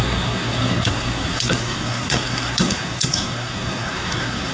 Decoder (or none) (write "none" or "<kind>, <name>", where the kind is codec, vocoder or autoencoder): codec, SNAC